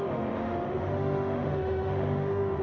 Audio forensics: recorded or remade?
remade